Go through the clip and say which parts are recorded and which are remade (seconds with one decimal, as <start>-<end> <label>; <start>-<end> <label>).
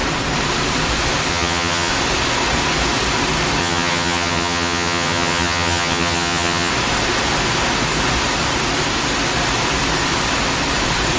0.0-1.3 recorded; 1.3-1.9 remade; 1.9-3.6 recorded; 3.6-6.7 remade; 6.7-11.2 recorded